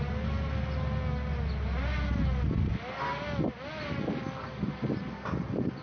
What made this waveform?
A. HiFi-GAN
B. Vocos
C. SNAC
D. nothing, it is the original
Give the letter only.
D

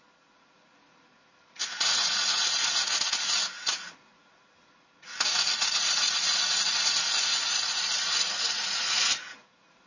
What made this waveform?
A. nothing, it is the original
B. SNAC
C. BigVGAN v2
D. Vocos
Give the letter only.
D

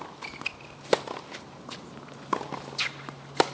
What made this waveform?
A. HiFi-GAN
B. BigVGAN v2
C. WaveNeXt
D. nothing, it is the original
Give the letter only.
D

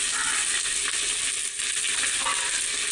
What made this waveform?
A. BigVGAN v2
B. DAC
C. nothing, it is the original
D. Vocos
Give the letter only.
C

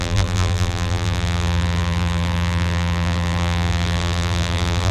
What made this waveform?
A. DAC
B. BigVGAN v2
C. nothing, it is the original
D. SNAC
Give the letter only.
B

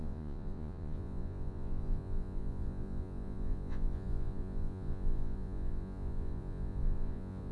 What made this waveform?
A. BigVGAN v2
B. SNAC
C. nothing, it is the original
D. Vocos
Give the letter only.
D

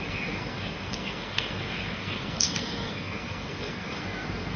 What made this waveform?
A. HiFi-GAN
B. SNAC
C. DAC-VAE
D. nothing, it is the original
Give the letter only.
B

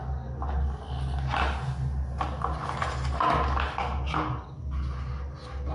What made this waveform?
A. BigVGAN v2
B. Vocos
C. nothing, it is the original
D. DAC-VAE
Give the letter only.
C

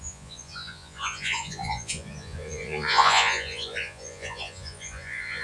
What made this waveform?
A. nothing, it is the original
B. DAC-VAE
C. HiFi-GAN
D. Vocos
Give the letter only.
D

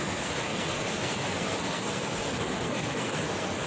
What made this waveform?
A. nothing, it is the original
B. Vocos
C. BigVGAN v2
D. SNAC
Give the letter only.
D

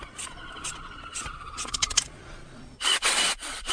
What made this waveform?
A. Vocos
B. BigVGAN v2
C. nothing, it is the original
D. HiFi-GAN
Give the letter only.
A